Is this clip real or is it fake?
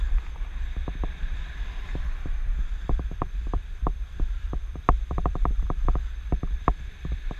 fake